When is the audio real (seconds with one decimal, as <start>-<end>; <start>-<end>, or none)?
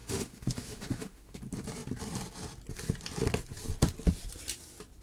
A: 1.4-5.0